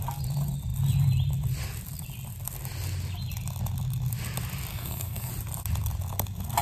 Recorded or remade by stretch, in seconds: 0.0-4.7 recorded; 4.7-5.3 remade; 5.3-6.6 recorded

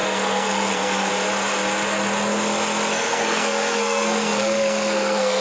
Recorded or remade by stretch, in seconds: 0.0-1.1 remade; 1.1-2.9 recorded; 2.9-5.4 remade

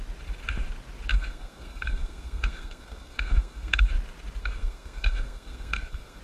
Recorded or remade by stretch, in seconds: 0.0-1.1 recorded; 1.1-3.9 remade; 3.9-4.4 recorded; 4.4-6.2 remade

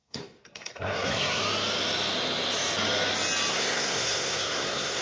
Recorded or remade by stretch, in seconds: 0.0-1.4 remade; 1.4-3.5 recorded; 3.5-5.0 remade

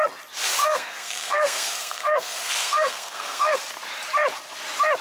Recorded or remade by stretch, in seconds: 0.0-0.6 recorded; 0.6-3.6 remade; 3.6-5.0 recorded